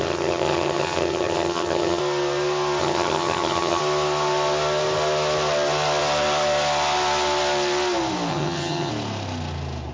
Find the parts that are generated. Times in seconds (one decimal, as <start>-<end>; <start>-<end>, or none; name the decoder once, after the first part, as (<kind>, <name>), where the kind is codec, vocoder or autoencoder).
0.0-2.0 (vocoder, HiFi-GAN); 2.8-3.8; 8.3-8.9